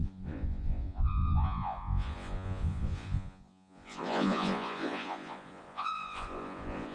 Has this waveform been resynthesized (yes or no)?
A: yes